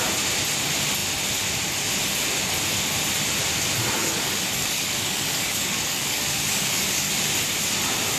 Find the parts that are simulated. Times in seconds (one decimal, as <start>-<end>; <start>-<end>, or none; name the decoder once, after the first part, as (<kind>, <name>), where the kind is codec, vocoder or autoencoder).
4.0-7.1 (codec, DAC)